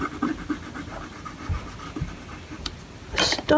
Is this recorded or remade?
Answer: recorded